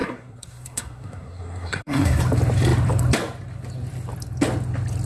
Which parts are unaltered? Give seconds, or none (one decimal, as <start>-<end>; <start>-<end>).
2.2-5.1